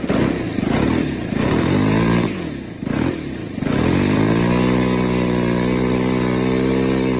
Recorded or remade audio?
recorded